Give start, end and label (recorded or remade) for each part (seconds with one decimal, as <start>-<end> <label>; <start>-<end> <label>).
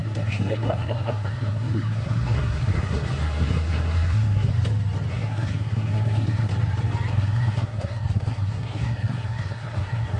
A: 0.0-4.5 remade; 4.5-5.1 recorded; 5.1-6.5 remade; 6.5-7.1 recorded; 7.1-10.2 remade